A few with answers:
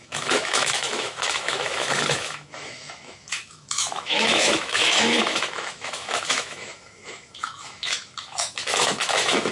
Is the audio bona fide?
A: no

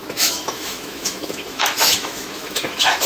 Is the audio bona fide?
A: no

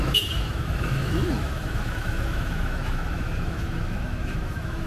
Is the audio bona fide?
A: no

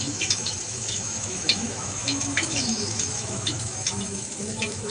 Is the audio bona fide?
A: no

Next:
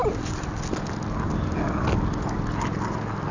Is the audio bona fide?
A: yes